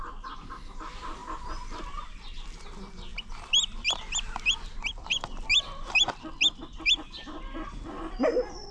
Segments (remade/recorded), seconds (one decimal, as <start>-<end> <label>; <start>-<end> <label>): 0.0-8.7 recorded